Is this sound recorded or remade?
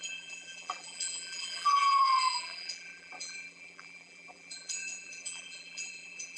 remade